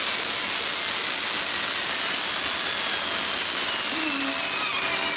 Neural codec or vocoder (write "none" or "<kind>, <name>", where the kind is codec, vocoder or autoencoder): none